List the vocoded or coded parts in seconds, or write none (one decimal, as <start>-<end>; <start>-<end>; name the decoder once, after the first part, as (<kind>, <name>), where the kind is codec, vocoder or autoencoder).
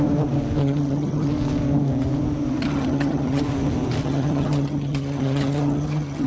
0.6-1.3 (vocoder, HiFi-GAN); 2.6-3.4; 4.0-6.3